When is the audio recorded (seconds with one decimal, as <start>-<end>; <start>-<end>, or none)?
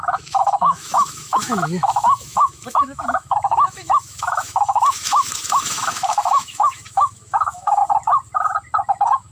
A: 7.8-8.9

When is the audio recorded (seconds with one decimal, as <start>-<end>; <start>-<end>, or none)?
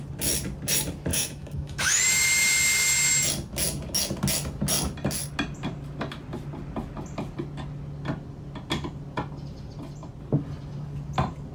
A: 0.0-1.1; 2.0-11.5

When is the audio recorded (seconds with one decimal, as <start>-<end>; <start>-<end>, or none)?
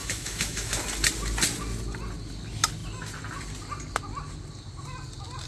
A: 0.8-5.5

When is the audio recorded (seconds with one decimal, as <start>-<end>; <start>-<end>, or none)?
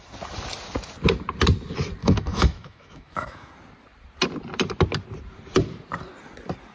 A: 0.0-2.0; 3.5-6.7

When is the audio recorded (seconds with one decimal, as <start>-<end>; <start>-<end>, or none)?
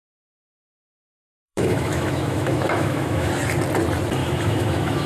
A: 0.0-0.9; 3.3-4.2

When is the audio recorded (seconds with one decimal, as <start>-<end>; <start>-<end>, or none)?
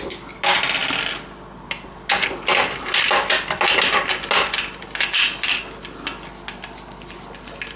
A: 0.0-7.8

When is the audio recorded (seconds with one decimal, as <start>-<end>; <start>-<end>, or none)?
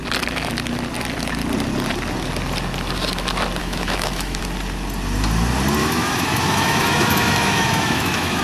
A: 0.0-3.6; 4.4-5.8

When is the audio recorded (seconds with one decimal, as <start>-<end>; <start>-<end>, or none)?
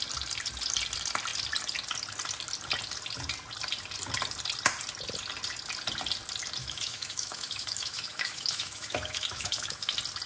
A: 0.0-6.6; 9.9-10.3